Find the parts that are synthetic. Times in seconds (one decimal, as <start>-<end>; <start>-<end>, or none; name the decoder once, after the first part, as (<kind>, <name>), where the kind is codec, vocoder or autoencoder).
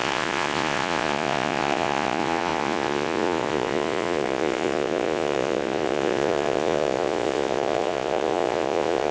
0.0-9.1 (vocoder, Vocos)